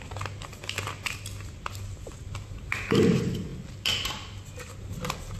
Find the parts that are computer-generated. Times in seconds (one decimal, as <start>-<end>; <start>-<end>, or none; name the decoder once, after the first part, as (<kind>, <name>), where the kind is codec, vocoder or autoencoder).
none